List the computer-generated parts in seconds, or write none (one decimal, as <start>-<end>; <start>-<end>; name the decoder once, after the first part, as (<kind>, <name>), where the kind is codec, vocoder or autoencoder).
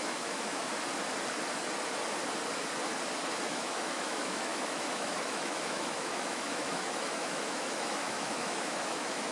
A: 0.0-0.7 (autoencoder, DAC-VAE); 3.5-9.3